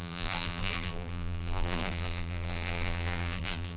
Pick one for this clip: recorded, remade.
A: remade